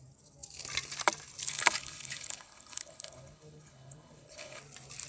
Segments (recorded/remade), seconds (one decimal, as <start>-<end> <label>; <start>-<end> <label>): 0.0-1.5 recorded; 1.5-4.6 remade; 4.6-5.1 recorded